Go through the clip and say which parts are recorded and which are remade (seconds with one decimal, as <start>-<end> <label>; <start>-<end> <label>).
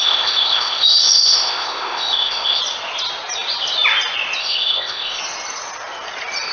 0.0-2.6 remade; 2.6-4.4 recorded; 4.4-5.2 remade; 5.2-6.5 recorded